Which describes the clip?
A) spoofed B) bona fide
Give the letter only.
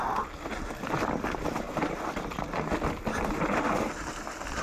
B